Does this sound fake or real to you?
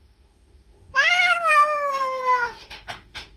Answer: fake